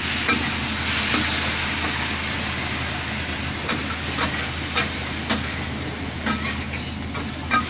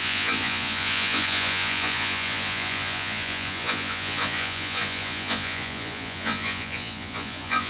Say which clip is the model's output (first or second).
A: second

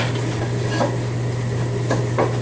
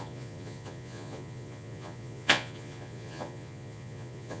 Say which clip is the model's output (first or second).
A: second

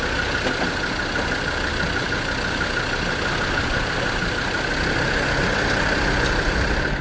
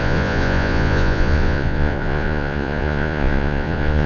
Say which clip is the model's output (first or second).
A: second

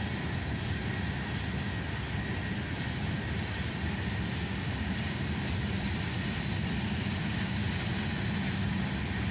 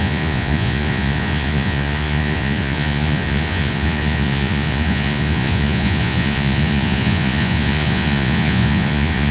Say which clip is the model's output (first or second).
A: second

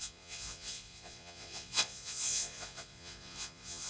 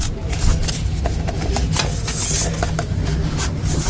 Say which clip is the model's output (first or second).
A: first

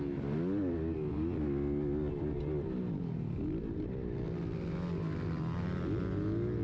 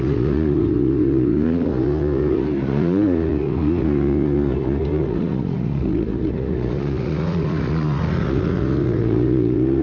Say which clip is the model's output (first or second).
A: second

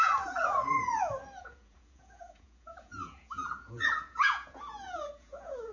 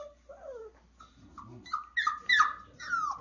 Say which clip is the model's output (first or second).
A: first